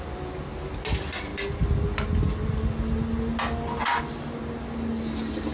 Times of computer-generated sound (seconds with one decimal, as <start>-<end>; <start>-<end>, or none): none